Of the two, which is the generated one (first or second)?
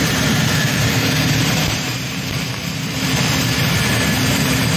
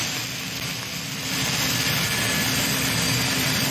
first